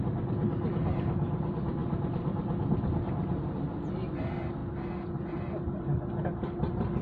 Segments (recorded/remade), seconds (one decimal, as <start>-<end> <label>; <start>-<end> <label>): 0.0-7.0 recorded